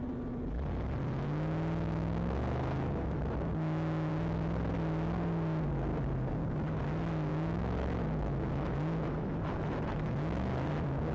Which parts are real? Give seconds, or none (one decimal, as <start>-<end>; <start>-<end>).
0.0-1.0; 4.1-7.3; 10.7-11.1